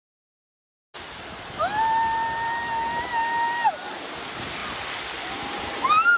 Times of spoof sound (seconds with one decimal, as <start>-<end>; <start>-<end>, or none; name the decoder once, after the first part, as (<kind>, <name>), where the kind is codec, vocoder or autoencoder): none